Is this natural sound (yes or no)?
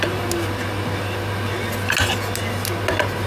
yes